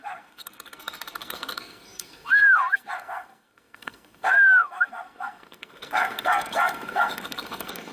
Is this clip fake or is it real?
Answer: fake